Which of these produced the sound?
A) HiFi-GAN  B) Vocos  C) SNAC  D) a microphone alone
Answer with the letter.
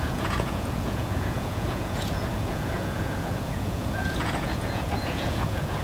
B